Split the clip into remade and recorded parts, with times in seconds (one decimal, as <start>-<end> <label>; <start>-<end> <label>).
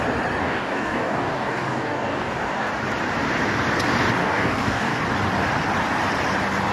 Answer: 0.0-0.4 recorded; 0.4-2.7 remade; 2.7-4.2 recorded; 4.2-5.0 remade; 5.0-6.7 recorded